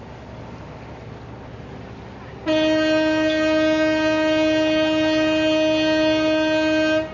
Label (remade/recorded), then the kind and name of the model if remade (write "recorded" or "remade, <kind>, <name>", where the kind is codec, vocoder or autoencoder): recorded